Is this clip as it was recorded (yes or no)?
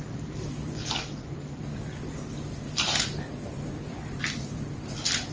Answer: no